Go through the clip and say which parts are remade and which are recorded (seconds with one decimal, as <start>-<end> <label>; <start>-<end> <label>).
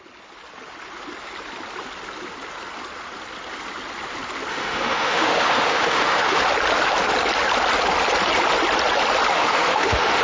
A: 0.0-4.5 recorded; 4.5-6.4 remade; 6.4-9.3 recorded; 9.3-10.2 remade